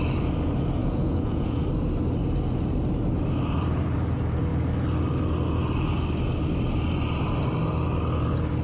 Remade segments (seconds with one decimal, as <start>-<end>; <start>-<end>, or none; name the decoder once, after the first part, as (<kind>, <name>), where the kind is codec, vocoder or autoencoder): 0.8-1.6 (vocoder, Vocos)